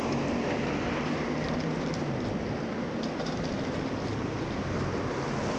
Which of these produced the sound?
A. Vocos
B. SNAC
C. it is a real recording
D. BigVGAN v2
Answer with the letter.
C